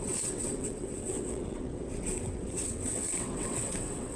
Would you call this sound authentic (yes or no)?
no